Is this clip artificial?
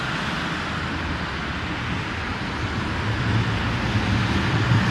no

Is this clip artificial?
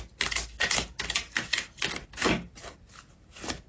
no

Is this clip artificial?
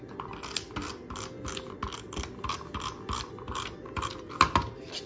no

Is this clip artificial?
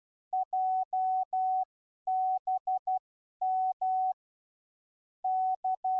no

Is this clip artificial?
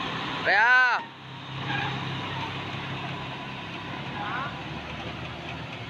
no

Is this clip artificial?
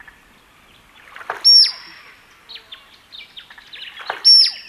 no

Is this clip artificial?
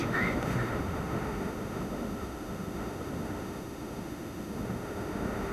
yes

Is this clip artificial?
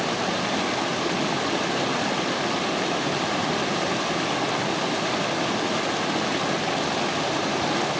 no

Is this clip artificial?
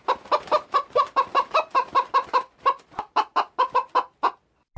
no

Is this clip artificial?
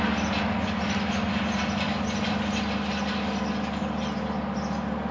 no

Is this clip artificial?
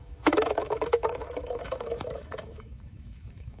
yes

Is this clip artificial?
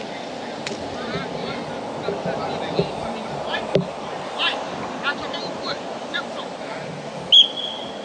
no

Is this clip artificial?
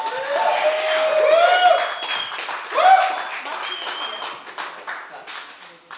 no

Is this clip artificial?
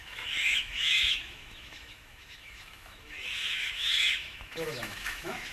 yes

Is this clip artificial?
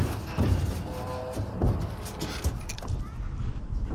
no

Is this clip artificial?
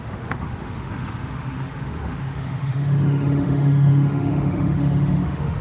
yes